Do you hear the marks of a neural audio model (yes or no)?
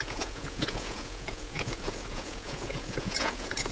yes